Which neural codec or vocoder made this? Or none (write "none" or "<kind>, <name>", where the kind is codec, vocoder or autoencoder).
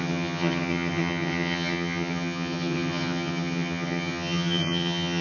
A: vocoder, HiFi-GAN